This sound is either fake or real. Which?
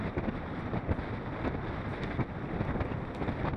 real